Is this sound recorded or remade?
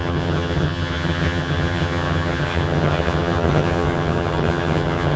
remade